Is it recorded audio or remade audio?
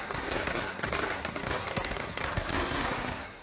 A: remade